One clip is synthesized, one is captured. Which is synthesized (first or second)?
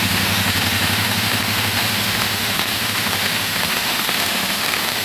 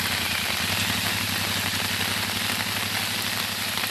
first